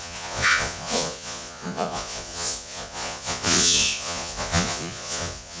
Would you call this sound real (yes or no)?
no